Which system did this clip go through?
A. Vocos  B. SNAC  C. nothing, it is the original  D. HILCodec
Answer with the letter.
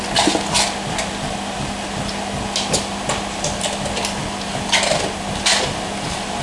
C